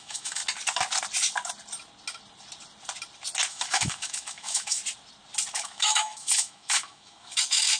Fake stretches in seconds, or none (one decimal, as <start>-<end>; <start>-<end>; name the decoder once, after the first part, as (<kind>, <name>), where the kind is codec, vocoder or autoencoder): 0.0-0.4 (autoencoder, DAC-VAE); 3.5-4.8; 5.5-7.8